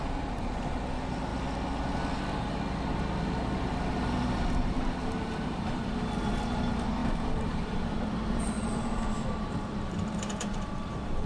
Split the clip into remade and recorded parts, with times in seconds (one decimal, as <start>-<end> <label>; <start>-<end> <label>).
0.0-1.3 remade; 1.3-4.4 recorded; 4.4-11.3 remade

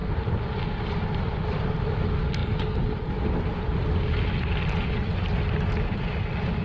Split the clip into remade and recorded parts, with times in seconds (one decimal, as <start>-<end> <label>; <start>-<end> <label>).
0.0-1.9 remade; 1.9-6.6 recorded